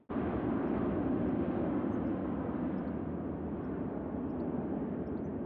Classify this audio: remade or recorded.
recorded